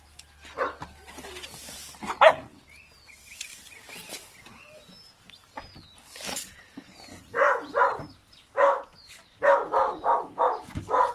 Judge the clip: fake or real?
real